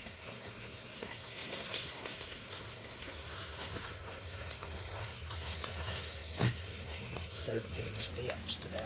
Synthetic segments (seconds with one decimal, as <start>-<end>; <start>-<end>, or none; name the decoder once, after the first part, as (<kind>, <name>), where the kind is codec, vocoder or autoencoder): 0.0-8.1 (codec, SNAC)